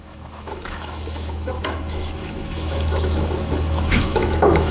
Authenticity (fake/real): fake